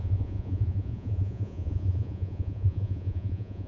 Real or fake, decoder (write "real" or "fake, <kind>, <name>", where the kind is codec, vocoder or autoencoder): fake, vocoder, Vocos